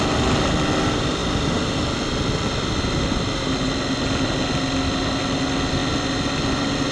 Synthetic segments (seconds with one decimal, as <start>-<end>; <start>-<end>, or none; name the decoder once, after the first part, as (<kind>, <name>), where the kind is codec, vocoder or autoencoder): none